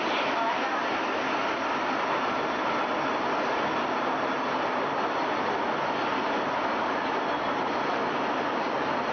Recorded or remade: recorded